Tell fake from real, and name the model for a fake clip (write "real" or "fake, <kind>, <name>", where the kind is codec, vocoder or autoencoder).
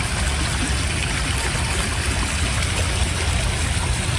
real